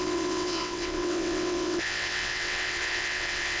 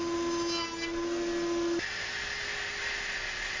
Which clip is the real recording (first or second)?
second